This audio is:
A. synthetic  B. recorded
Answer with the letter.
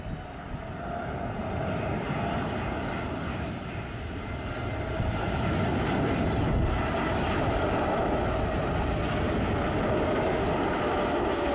B